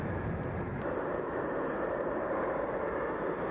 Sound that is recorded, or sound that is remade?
recorded